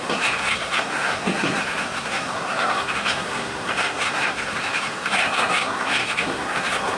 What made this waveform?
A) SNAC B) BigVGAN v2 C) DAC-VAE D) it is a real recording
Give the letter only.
A